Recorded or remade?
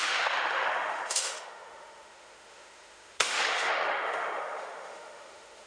remade